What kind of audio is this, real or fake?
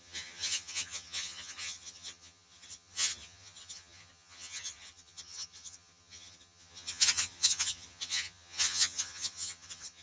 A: fake